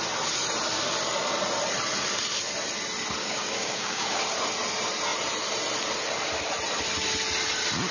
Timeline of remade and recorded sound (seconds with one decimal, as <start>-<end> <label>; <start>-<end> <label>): 0.0-3.2 recorded; 3.2-4.2 remade; 4.2-7.9 recorded